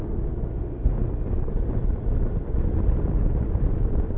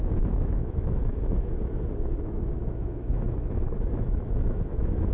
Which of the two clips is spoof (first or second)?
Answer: second